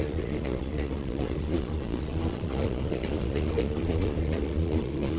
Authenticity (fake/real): fake